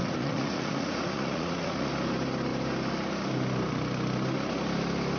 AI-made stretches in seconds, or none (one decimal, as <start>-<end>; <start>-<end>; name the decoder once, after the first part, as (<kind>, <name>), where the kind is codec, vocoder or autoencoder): 0.0-1.9 (vocoder, Vocos)